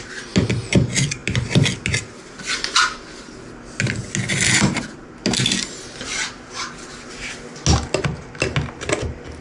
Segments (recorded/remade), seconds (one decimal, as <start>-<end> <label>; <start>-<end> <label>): 0.0-9.4 recorded